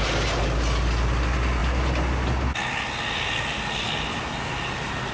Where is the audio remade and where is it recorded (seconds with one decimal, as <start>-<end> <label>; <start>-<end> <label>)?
0.0-5.1 recorded